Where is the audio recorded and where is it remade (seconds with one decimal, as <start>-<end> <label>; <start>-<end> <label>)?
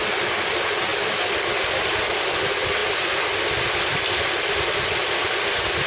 0.0-5.9 recorded